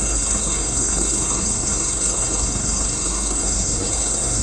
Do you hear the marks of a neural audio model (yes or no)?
yes